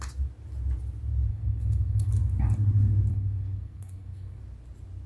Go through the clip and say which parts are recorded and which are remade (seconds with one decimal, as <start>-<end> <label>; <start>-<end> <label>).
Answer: 0.0-1.3 recorded; 1.3-2.1 remade; 2.1-3.1 recorded; 3.1-4.4 remade; 4.4-5.1 recorded